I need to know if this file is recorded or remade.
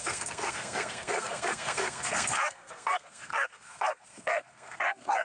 remade